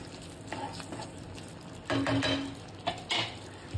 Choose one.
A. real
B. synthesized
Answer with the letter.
A